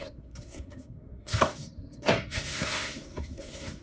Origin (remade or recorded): remade